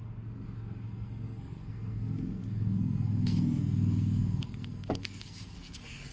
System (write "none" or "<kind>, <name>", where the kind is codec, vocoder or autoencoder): codec, SNAC